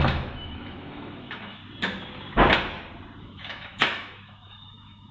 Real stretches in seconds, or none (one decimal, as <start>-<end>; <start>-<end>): 1.6-3.2